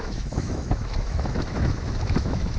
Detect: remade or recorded remade